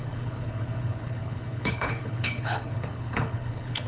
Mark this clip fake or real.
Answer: fake